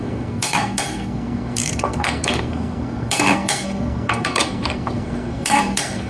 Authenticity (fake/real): fake